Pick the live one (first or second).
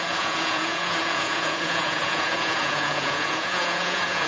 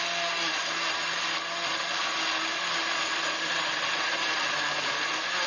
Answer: second